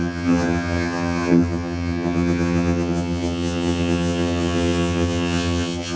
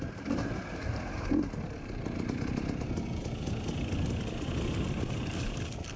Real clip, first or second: second